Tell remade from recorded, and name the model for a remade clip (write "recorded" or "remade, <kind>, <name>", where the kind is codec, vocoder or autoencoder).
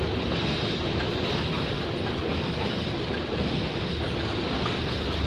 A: recorded